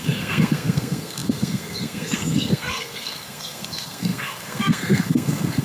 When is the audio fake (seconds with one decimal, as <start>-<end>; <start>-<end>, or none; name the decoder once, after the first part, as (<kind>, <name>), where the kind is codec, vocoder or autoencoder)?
0.0-5.6 (codec, SNAC)